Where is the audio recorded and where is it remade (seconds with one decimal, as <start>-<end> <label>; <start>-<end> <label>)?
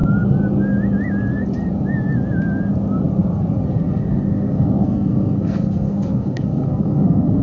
0.0-3.8 recorded; 3.8-7.4 remade